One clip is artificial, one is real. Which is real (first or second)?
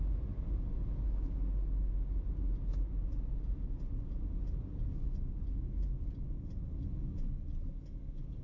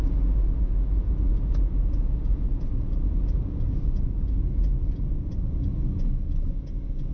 first